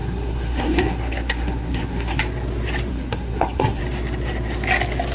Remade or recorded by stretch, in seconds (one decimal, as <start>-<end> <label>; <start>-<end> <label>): 0.0-2.2 remade; 2.2-2.9 recorded; 2.9-3.8 remade; 3.8-5.1 recorded